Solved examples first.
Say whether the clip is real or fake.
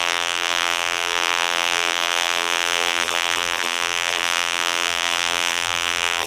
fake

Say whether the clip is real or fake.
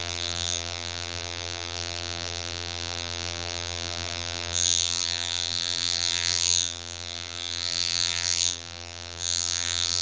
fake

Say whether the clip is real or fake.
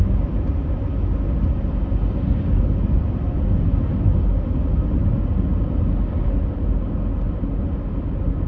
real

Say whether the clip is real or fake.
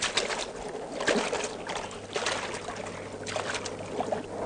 real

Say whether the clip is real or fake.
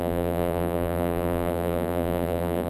fake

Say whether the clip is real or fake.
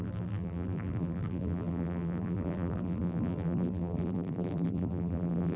fake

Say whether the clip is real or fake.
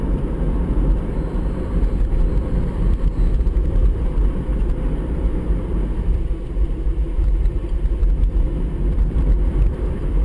fake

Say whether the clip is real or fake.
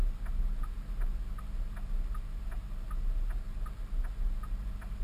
real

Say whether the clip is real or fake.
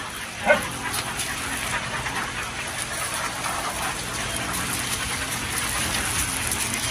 real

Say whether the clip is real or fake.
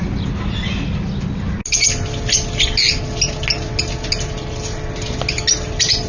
real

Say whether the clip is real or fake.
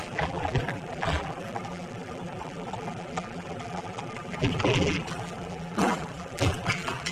fake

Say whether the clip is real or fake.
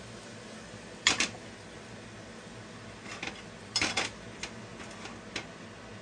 real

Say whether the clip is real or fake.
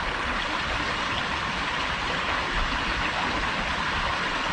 real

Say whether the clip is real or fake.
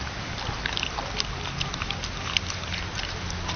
real